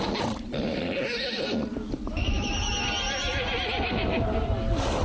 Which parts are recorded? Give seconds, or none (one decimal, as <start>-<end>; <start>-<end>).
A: 0.0-1.7; 2.7-5.0